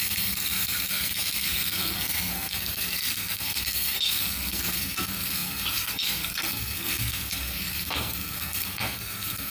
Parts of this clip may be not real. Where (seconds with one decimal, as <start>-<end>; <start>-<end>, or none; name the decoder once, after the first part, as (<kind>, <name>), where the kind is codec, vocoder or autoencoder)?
0.0-9.5 (codec, SNAC)